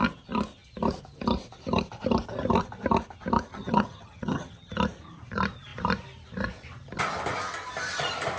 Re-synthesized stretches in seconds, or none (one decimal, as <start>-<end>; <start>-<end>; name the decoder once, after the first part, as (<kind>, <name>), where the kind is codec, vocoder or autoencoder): 3.5-4.7 (vocoder, HiFi-GAN)